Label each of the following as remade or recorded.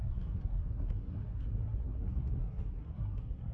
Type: remade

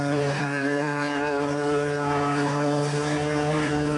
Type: remade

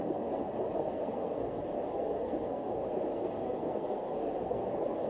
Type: remade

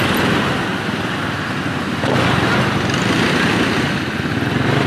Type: recorded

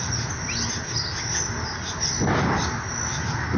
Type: recorded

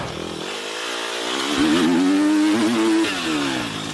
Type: recorded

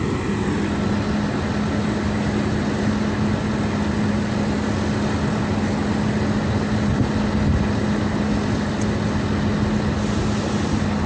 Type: recorded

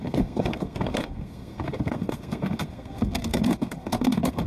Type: remade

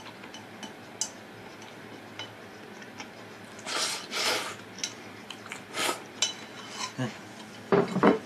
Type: recorded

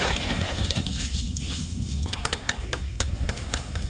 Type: remade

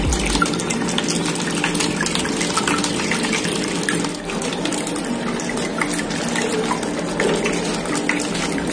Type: recorded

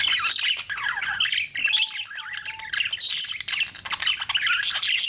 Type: recorded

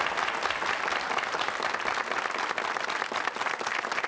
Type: recorded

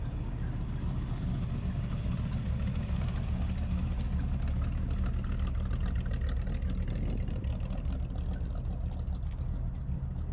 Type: recorded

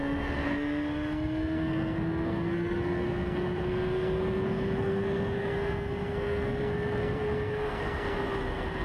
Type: remade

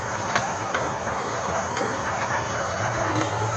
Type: remade